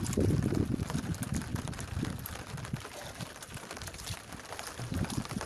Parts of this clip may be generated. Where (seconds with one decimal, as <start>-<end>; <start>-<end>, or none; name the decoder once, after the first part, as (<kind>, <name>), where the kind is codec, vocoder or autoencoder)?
none